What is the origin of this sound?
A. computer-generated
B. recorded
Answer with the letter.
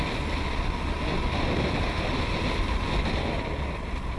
B